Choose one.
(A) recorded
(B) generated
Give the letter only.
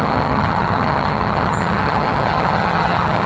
B